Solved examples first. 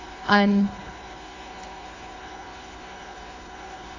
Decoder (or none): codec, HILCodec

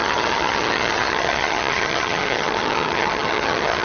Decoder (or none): vocoder, HiFi-GAN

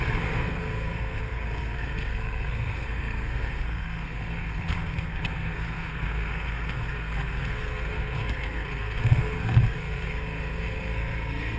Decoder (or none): codec, SNAC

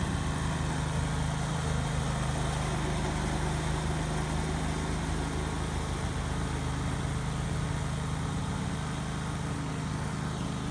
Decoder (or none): none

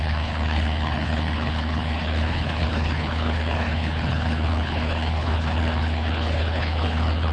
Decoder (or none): codec, HILCodec